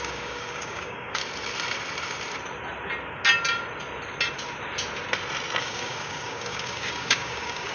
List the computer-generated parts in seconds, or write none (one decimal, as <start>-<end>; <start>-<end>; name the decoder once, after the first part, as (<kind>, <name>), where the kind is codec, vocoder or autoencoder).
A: 0.0-1.2 (codec, DAC); 5.6-7.7